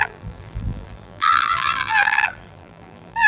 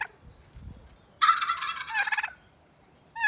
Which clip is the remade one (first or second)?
first